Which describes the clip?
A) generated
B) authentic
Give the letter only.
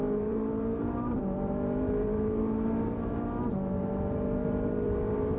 A